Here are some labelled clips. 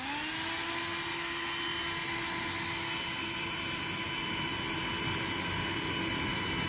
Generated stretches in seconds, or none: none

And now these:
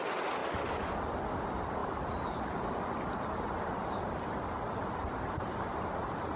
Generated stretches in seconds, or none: none

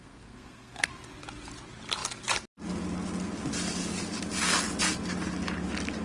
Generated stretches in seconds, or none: 0.0-0.9 (codec, SNAC)

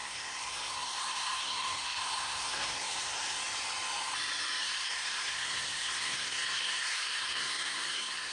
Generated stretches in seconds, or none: 0.0-3.4 (codec, SNAC); 4.6-8.3

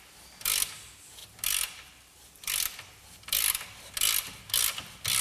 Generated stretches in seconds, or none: none

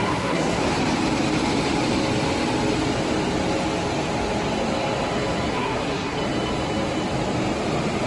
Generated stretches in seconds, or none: 0.0-0.6 (codec, SNAC); 5.5-6.2

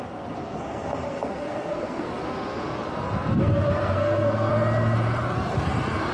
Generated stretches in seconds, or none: 0.0-2.1 (codec, SNAC); 3.3-4.5

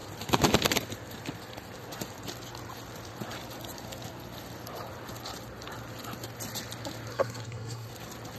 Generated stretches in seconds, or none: 7.1-7.9 (codec, SNAC)